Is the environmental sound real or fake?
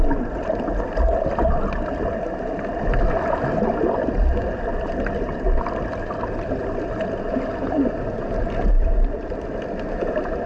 real